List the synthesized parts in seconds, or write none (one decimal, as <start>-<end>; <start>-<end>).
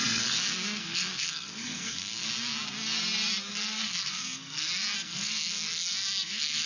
0.0-2.3; 3.5-6.7